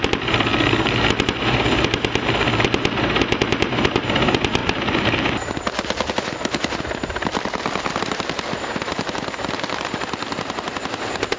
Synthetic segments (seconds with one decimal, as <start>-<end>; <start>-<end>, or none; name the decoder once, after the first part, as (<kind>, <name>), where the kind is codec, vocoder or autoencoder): none